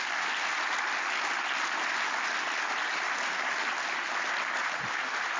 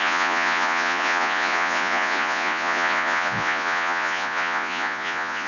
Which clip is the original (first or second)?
first